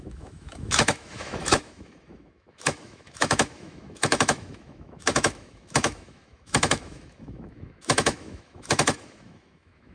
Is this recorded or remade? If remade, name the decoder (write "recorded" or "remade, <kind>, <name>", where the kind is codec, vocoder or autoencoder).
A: remade, autoencoder, DAC-VAE